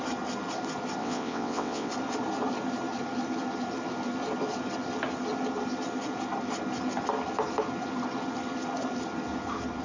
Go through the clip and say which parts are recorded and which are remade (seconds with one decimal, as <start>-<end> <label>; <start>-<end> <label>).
0.0-1.0 recorded; 1.0-1.9 remade; 1.9-9.8 recorded